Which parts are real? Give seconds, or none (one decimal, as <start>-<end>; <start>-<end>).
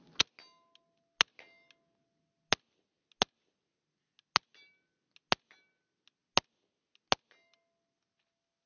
0.0-8.7